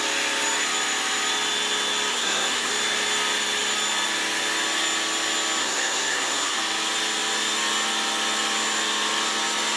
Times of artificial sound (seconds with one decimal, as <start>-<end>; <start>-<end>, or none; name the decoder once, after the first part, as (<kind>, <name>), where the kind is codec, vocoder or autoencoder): 2.1-2.7 (codec, SNAC); 5.6-6.6